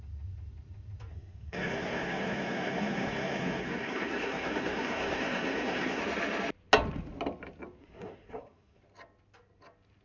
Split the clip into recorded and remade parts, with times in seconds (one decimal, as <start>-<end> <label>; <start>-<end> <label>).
0.0-1.1 recorded; 1.1-6.0 remade; 6.0-7.8 recorded; 7.8-8.8 remade; 8.8-10.0 recorded